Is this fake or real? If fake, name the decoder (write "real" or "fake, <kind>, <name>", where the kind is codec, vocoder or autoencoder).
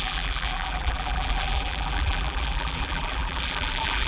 fake, vocoder, BigVGAN v2